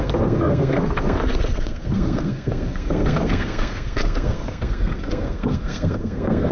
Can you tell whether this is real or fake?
fake